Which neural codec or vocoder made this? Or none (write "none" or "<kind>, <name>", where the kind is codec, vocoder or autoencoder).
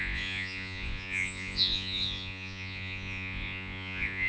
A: vocoder, Vocos